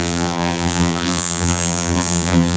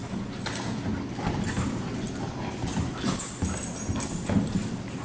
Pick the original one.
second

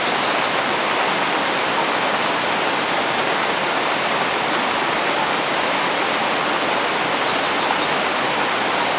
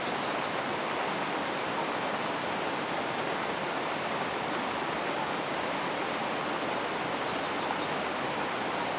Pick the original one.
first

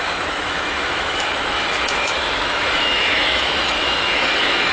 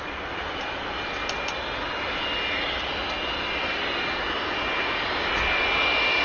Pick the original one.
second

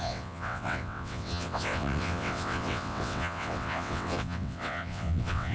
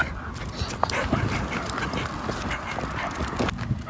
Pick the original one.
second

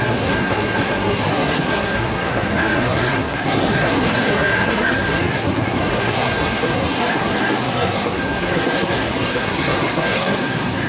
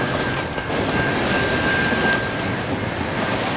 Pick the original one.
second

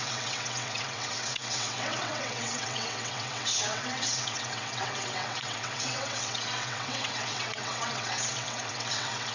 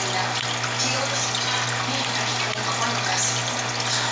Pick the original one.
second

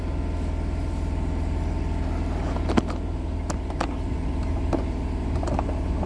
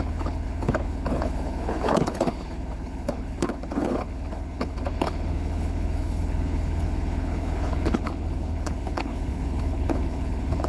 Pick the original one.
first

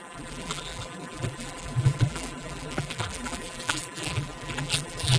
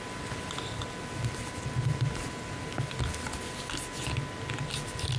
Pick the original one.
second